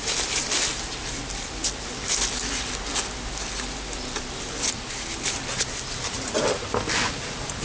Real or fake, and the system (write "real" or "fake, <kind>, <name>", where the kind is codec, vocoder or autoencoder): real